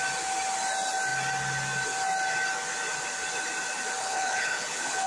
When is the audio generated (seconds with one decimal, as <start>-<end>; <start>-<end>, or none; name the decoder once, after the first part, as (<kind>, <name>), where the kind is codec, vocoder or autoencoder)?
4.0-5.1 (codec, HILCodec)